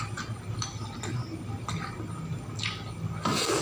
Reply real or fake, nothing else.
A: real